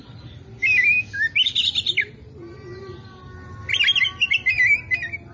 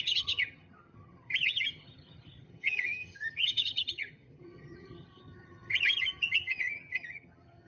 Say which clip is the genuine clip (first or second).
first